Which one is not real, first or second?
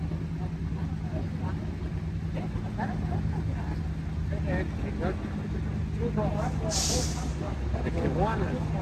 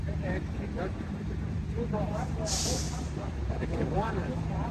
second